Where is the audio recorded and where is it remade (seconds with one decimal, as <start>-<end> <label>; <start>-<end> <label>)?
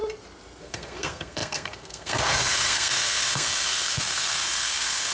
0.0-0.6 recorded; 0.6-5.1 remade